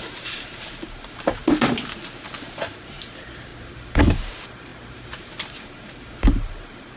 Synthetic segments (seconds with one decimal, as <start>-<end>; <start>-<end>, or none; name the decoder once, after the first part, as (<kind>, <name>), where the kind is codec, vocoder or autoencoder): 0.0-1.4 (vocoder, BigVGAN v2); 2.4-7.0